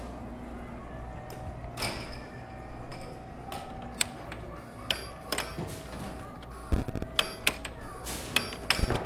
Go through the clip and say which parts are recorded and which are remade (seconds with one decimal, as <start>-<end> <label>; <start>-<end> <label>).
0.0-9.1 recorded